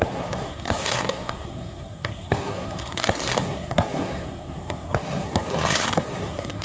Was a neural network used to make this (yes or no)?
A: yes